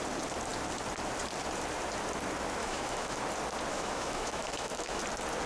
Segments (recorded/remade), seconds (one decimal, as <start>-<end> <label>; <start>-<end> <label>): 0.0-2.6 recorded; 2.6-3.2 remade; 3.2-3.7 recorded; 3.7-5.0 remade; 5.0-5.5 recorded